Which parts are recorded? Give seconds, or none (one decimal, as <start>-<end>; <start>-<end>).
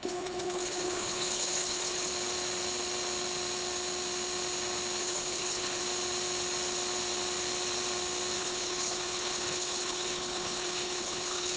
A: 2.1-5.0; 5.8-8.4